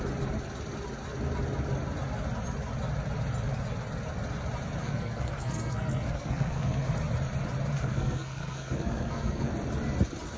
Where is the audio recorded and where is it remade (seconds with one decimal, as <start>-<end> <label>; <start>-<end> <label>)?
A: 0.0-4.8 recorded; 4.8-6.9 remade; 6.9-7.7 recorded; 7.7-9.5 remade; 9.5-10.4 recorded